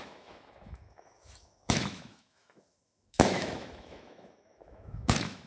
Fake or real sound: fake